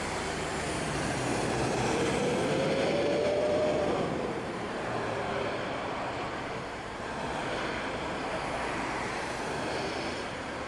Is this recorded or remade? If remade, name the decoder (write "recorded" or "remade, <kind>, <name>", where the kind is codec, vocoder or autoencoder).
remade, vocoder, BigVGAN v2